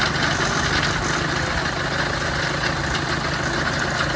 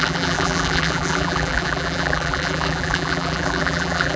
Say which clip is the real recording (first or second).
first